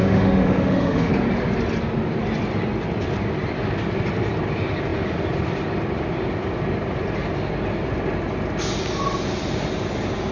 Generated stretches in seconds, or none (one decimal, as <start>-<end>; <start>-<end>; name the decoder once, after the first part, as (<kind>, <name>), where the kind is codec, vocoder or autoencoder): 0.0-1.1 (autoencoder, DAC-VAE)